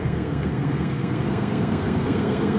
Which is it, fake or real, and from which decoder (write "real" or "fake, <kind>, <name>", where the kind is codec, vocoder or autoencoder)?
fake, codec, SNAC